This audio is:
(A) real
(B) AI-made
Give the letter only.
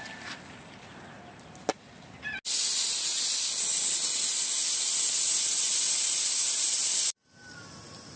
A